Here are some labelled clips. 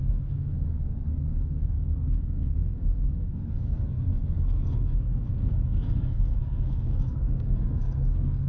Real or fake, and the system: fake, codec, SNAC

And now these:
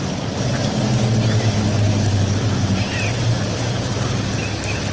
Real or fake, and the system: real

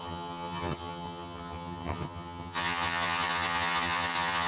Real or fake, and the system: fake, vocoder, HiFi-GAN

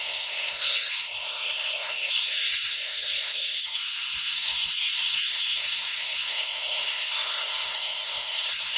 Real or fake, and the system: fake, codec, SNAC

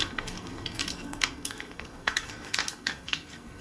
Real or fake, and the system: fake, codec, SNAC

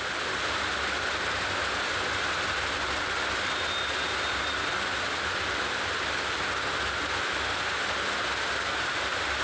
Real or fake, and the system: real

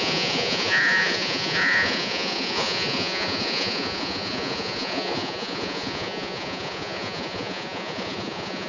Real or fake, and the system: fake, vocoder, Vocos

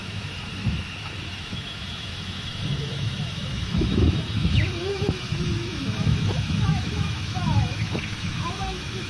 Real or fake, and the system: fake, autoencoder, DAC-VAE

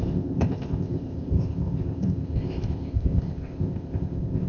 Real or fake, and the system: fake, codec, ZipCodec